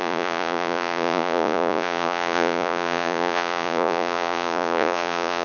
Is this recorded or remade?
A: remade